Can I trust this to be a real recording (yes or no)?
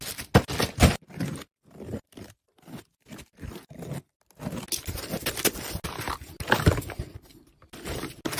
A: yes